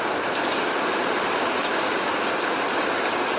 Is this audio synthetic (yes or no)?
no